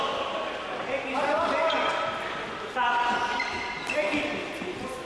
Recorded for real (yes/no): yes